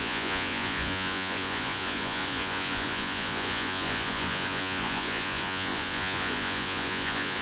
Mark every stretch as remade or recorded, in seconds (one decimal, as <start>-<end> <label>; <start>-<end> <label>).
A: 0.0-7.4 remade